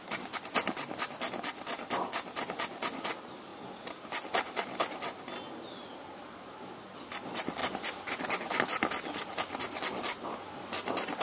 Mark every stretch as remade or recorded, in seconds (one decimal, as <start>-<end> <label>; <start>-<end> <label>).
0.0-11.2 recorded